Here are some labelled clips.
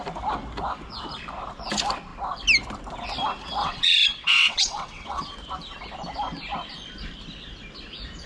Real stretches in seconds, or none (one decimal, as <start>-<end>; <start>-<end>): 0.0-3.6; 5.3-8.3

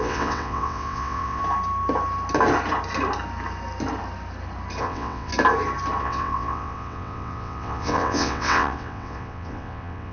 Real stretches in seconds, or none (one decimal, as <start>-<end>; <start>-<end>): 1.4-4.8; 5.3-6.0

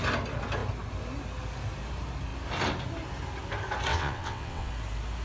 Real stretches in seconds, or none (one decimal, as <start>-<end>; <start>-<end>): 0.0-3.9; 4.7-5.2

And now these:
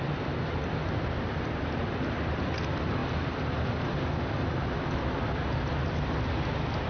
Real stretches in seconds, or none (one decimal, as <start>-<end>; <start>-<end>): 0.0-6.9

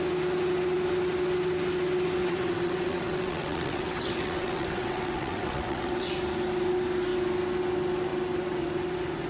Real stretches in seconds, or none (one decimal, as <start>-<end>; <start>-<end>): 0.0-2.2; 6.1-9.3